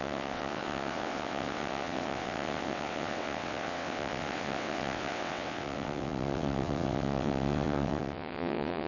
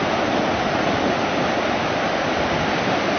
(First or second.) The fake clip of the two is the first